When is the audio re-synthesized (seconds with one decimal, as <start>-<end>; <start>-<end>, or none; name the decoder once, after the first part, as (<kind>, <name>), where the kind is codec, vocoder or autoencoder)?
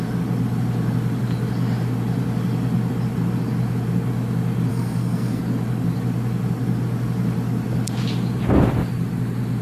4.7-5.4 (codec, SNAC)